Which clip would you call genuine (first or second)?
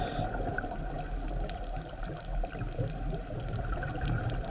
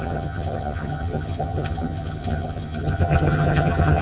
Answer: first